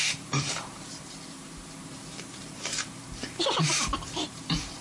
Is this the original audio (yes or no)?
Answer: no